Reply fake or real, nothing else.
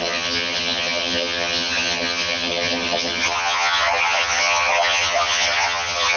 fake